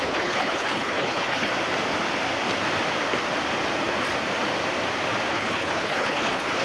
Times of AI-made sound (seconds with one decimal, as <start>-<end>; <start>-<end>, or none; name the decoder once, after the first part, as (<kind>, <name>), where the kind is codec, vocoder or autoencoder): 0.0-1.5 (codec, HILCodec); 5.3-6.6